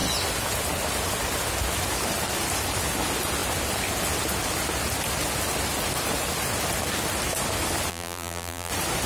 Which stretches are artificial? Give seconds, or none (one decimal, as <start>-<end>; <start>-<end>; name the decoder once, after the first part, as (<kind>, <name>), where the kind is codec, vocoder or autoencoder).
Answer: 7.9-8.7 (vocoder, BigVGAN v2)